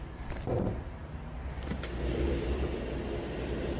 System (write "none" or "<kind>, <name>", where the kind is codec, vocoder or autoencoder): none